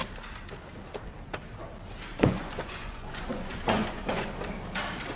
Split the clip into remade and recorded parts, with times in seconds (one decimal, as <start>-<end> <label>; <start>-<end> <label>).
0.0-2.1 recorded; 2.1-4.3 remade; 4.3-5.2 recorded